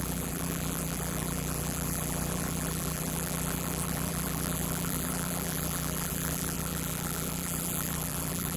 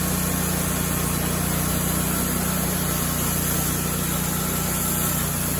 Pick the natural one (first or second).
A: second